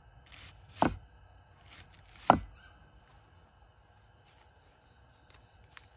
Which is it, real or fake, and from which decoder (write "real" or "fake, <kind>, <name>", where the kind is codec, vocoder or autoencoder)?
real